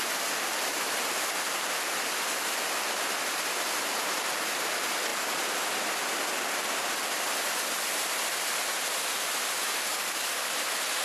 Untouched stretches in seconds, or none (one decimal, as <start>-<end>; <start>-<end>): 0.0-9.9; 10.5-11.0